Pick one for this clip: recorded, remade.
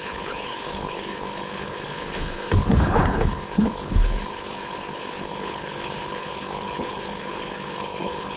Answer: remade